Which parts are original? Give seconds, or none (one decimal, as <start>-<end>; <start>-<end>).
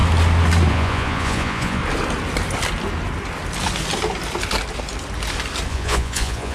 0.0-0.7; 1.8-5.7